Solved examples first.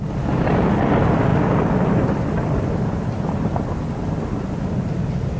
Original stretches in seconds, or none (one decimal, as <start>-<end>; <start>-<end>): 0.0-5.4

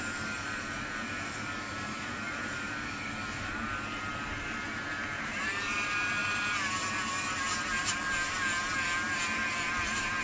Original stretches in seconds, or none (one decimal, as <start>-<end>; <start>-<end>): none

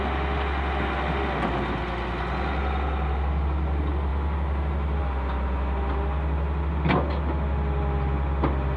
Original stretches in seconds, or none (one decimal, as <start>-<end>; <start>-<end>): 0.0-8.8

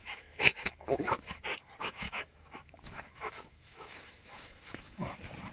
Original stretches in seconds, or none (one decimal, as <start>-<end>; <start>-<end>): 1.4-1.8; 5.1-5.5

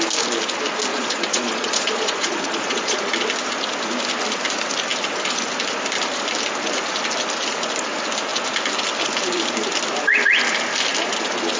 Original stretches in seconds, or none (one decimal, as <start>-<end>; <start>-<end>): 0.0-0.9; 3.0-11.6

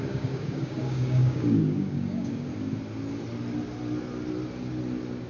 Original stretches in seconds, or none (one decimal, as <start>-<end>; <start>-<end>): 2.5-5.3

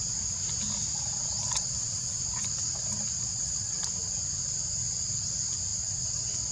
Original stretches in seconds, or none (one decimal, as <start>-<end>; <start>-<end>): 0.0-1.6; 2.2-3.3; 3.8-6.5

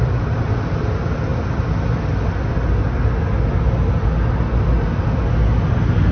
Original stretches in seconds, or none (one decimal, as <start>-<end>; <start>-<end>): 0.0-6.1